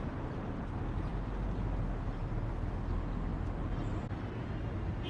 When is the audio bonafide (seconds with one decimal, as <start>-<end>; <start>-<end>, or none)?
0.0-5.1